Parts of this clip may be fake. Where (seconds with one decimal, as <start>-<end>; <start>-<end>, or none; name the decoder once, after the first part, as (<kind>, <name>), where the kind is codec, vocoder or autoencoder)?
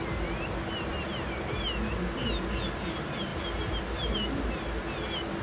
3.3-3.8 (vocoder, BigVGAN v2)